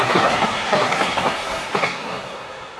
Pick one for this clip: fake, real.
fake